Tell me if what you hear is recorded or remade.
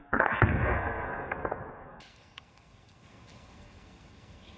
remade